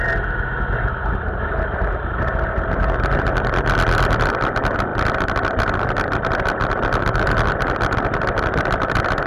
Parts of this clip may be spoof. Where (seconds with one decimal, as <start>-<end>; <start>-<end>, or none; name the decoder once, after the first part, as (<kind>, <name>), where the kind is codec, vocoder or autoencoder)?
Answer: none

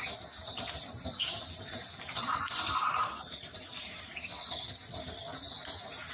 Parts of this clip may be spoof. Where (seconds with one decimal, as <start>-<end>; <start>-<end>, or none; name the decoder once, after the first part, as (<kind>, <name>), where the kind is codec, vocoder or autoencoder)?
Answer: 0.4-4.1 (vocoder, BigVGAN v2)

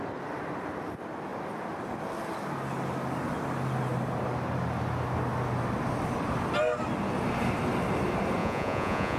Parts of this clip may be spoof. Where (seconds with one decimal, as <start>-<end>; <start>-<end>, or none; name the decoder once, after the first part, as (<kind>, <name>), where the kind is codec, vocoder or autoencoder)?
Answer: 8.4-9.2 (vocoder, Vocos)

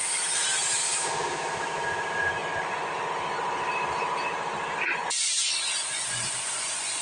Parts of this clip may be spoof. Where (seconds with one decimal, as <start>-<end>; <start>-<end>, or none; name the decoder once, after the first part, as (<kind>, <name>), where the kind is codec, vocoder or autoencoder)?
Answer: 2.4-2.9 (vocoder, Vocos); 5.0-7.0

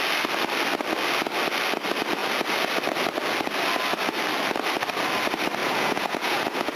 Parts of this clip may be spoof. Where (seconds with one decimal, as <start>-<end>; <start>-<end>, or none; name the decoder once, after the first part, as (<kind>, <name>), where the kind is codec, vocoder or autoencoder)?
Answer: 5.6-6.8 (vocoder, Vocos)